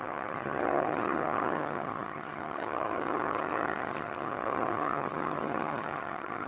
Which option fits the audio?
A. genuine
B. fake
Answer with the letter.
B